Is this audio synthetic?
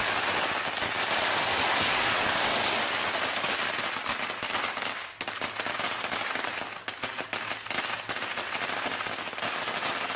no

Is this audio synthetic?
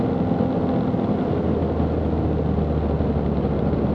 no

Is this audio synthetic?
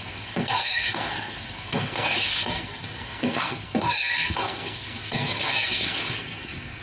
yes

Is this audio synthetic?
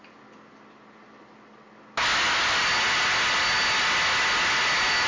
no